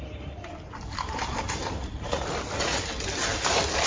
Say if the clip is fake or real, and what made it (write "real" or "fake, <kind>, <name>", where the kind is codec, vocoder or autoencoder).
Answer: fake, vocoder, BigVGAN v2